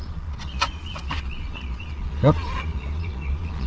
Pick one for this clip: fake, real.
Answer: fake